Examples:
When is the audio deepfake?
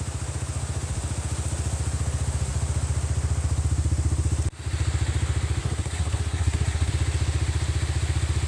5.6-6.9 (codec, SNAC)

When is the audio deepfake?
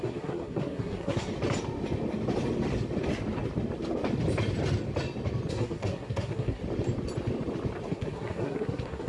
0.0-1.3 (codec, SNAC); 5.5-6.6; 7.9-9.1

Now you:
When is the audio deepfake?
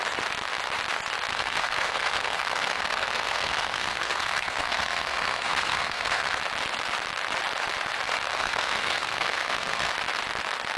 1.3-6.4 (codec, SNAC); 8.4-9.9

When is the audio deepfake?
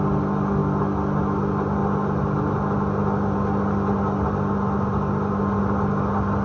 none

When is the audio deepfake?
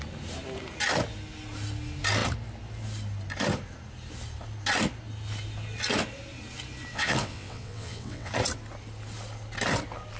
6.9-8.3 (vocoder, WaveNeXt)